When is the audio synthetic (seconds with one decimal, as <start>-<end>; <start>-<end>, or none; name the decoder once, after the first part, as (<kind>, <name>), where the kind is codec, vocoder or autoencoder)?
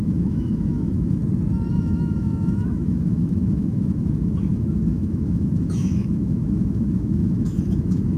0.0-1.2 (autoencoder, DAC-VAE); 1.7-8.2